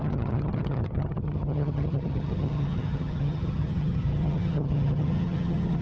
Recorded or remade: remade